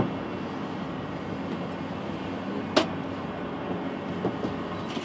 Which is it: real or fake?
real